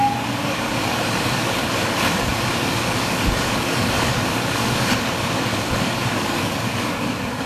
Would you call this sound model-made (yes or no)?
yes